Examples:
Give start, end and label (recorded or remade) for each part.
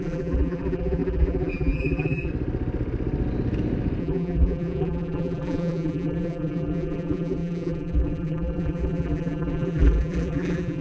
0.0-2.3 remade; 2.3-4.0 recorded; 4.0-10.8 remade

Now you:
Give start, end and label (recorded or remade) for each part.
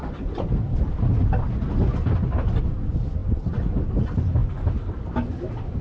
0.0-1.9 recorded; 1.9-2.6 remade; 2.6-5.8 recorded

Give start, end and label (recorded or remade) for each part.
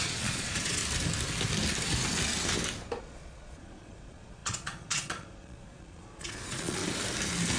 0.0-0.8 remade; 0.8-3.0 recorded; 3.0-6.8 remade; 6.8-7.6 recorded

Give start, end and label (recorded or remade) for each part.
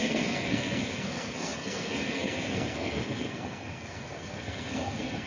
0.0-5.3 remade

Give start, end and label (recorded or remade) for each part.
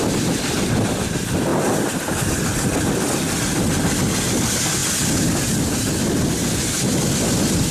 0.0-7.7 recorded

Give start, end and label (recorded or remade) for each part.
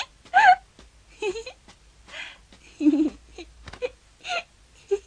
0.0-5.1 recorded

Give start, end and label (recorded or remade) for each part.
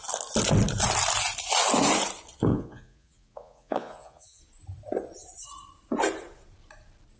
0.0-2.5 recorded; 2.5-4.4 remade; 4.4-7.2 recorded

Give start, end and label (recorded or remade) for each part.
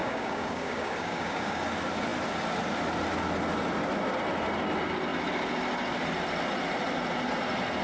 0.0-1.6 remade; 1.6-7.8 recorded